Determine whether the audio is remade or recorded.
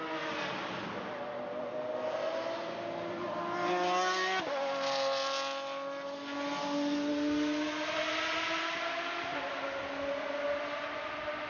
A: recorded